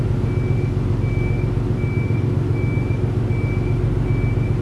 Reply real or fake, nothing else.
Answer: real